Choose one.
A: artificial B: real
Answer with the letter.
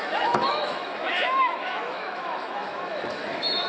A